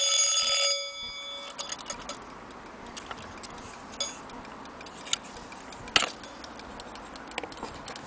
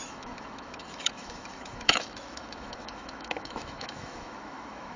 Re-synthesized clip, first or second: second